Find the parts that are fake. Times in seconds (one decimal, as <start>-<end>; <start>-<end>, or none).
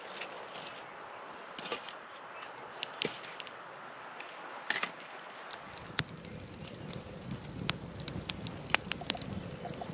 0.0-0.7; 1.7-2.3